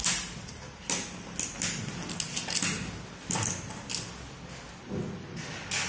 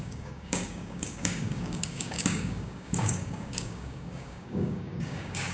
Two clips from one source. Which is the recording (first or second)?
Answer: first